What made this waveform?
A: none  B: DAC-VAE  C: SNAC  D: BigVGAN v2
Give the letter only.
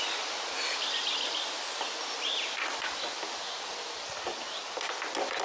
A